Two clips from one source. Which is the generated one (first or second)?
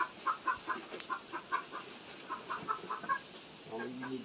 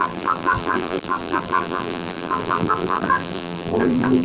second